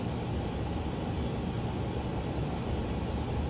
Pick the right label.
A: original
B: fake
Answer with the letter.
A